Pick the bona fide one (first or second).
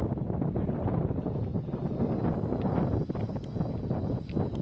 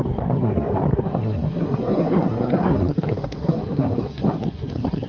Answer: first